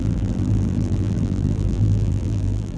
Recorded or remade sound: remade